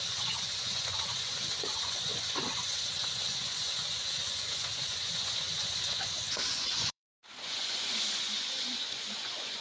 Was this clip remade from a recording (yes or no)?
yes